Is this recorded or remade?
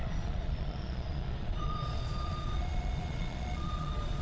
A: remade